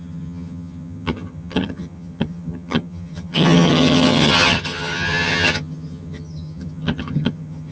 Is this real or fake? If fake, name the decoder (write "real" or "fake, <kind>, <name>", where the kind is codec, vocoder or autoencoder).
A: fake, vocoder, HiFi-GAN